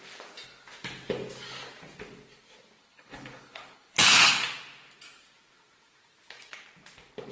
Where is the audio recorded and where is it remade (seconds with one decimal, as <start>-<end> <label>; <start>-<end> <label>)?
0.0-2.8 recorded; 2.8-4.4 remade; 4.4-7.3 recorded